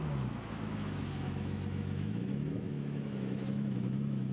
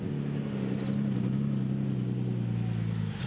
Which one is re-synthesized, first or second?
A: first